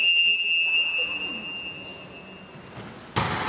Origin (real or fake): real